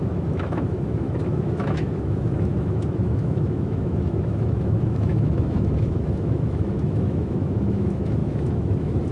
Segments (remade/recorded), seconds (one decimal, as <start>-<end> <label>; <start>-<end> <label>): 0.0-9.1 remade